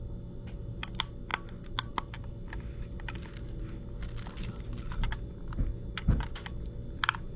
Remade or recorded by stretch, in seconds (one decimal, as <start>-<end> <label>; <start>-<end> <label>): 0.0-7.4 recorded